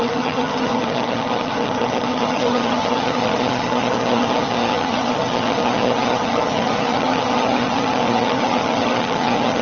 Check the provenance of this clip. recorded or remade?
remade